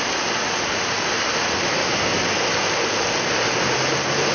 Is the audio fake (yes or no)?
no